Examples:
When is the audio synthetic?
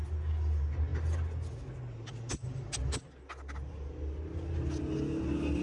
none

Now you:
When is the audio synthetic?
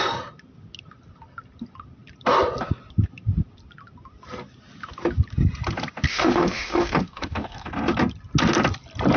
6.1-7.7 (autoencoder, DAC-VAE)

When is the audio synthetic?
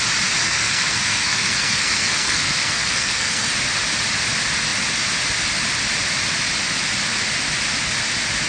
0.4-3.5 (codec, SNAC)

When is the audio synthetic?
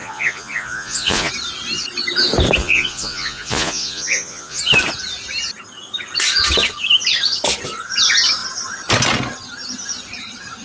0.0-1.3 (vocoder, Vocos); 2.6-4.6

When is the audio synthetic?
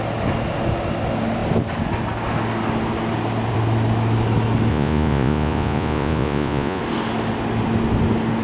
4.7-6.8 (vocoder, Vocos)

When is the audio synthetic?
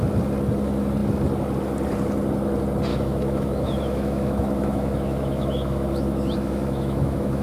2.9-7.4 (autoencoder, DAC-VAE)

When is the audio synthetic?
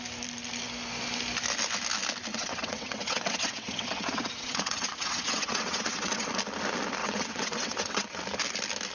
2.3-6.3 (vocoder, WaveNeXt); 7.0-8.2